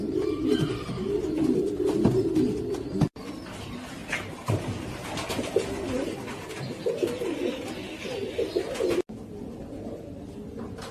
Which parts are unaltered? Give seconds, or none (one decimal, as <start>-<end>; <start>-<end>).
0.0-10.9